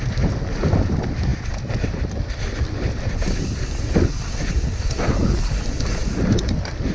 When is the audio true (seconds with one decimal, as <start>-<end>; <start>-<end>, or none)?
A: 0.0-6.9